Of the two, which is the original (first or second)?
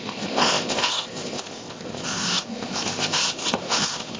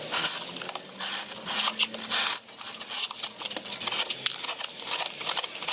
second